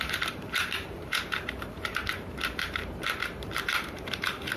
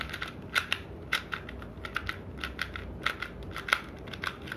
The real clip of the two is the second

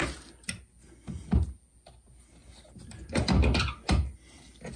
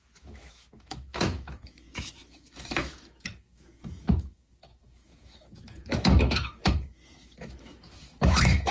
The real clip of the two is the first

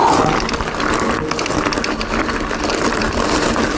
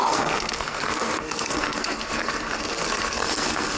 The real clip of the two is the first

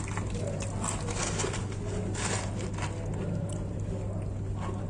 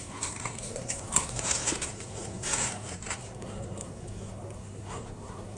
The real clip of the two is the first